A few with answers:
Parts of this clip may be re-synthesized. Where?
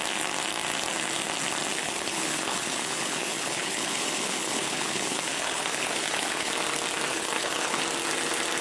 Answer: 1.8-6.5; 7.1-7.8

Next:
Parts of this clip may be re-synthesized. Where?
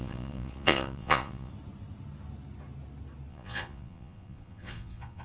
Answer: 0.0-1.5; 3.3-5.2